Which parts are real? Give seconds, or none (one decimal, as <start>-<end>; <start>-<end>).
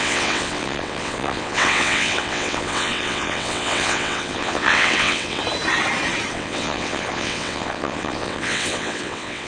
5.4-6.3